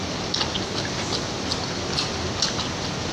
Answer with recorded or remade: recorded